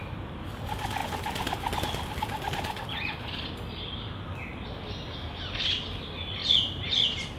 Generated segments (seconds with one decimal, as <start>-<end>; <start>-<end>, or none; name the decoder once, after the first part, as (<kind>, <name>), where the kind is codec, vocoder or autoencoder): 6.4-6.9 (vocoder, BigVGAN v2)